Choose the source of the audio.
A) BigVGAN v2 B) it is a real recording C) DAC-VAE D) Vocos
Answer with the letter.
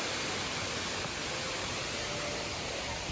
B